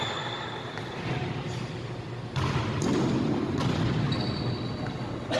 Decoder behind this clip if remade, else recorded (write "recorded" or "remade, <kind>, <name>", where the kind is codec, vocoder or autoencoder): recorded